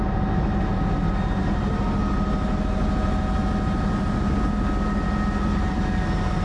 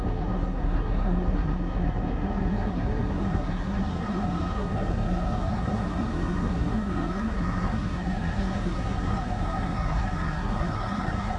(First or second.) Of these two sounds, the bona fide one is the first